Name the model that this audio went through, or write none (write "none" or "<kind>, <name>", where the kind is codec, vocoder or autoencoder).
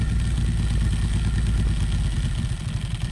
none